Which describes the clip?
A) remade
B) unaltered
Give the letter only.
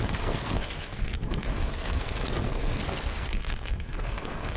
A